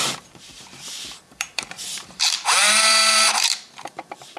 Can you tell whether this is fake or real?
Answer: fake